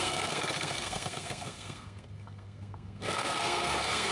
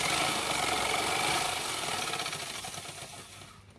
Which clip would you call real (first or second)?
second